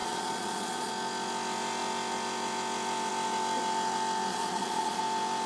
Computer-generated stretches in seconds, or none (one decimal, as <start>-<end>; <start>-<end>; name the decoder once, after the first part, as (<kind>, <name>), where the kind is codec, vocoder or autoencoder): 0.0-0.9 (vocoder, Vocos); 4.3-5.0